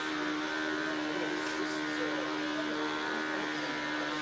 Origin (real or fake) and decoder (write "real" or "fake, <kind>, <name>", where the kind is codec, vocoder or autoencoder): fake, vocoder, BigVGAN v2